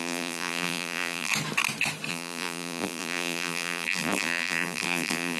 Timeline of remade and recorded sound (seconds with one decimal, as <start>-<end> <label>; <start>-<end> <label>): 0.0-1.3 remade; 1.3-2.1 recorded; 2.1-5.4 remade